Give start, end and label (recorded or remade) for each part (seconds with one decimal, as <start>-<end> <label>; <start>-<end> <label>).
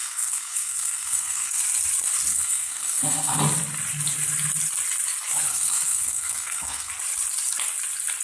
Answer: 0.0-1.6 remade; 1.6-2.3 recorded; 2.3-3.4 remade; 3.4-5.5 recorded; 5.5-6.9 remade; 6.9-8.2 recorded